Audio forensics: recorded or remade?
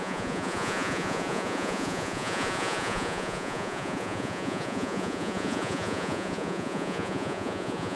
remade